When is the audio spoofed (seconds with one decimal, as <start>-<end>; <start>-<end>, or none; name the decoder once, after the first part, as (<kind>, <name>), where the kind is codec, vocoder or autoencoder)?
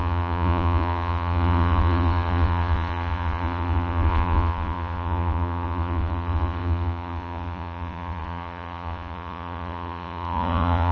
0.0-10.9 (vocoder, Vocos)